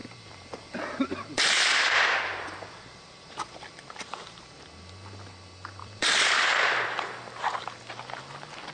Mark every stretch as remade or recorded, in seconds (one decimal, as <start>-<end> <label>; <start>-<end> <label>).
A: 0.0-4.4 remade; 4.4-5.8 recorded; 5.8-8.7 remade